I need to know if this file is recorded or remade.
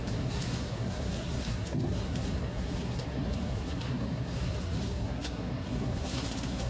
remade